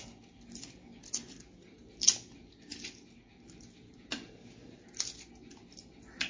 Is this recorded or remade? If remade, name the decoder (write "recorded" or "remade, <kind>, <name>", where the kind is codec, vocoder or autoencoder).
recorded